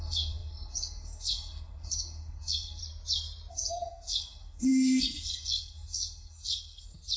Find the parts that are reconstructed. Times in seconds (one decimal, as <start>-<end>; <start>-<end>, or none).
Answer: 0.0-2.8; 3.5-7.2